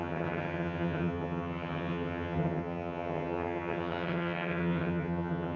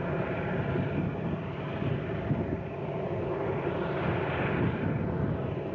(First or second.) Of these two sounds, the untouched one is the second